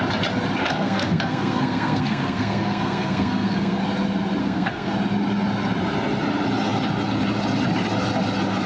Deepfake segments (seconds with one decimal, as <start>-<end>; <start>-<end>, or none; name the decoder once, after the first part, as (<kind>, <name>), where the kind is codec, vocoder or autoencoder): 0.6-3.8 (codec, SNAC); 4.4-4.9